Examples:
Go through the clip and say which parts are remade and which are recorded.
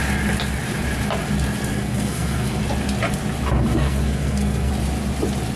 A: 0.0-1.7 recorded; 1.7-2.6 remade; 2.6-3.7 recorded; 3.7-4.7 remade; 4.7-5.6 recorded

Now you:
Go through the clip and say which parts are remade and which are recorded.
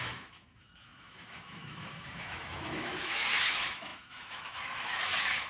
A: 0.0-5.5 remade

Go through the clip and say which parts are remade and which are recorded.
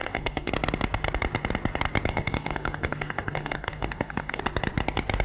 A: 0.0-0.5 remade; 0.5-2.1 recorded; 2.1-4.4 remade; 4.4-5.2 recorded